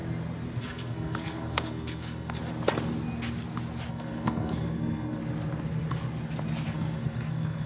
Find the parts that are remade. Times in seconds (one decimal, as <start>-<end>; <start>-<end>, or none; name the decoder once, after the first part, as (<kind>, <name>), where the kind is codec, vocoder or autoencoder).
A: 0.6-2.4 (codec, SNAC); 3.9-5.2; 6.7-7.7